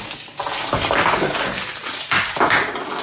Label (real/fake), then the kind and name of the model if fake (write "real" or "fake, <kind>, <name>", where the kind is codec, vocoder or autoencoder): real